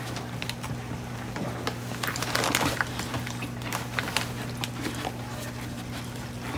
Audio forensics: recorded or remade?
recorded